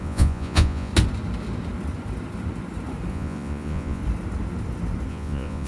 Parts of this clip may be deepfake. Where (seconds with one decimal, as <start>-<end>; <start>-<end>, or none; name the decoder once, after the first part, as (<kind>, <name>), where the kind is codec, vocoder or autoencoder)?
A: 0.0-0.9 (vocoder, Vocos); 3.1-4.0; 5.1-5.7